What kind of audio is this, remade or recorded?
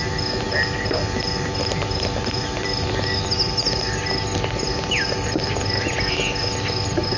recorded